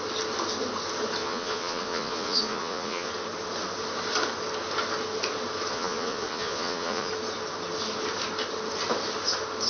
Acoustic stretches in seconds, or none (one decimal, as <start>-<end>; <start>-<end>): 0.0-1.2; 3.1-5.7; 7.1-9.7